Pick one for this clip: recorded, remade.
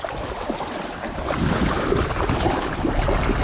recorded